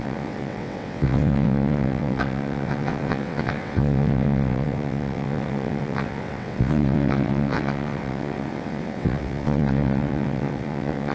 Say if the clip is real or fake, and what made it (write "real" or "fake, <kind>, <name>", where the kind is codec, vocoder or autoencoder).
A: fake, vocoder, WaveNeXt